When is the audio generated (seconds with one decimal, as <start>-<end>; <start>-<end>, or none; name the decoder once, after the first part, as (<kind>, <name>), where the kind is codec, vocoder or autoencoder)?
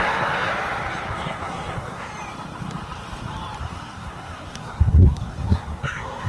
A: 0.0-0.5 (codec, SNAC); 1.1-2.1; 3.6-6.3